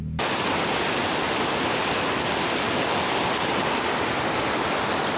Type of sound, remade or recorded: recorded